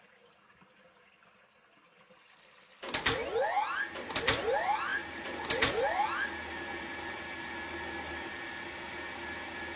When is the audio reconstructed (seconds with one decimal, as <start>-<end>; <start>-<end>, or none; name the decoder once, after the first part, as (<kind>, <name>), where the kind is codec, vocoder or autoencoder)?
none